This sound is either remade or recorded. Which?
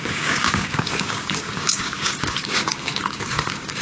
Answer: remade